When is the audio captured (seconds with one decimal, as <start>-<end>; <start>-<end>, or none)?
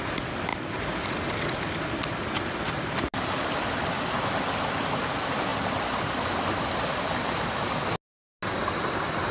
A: 0.0-9.3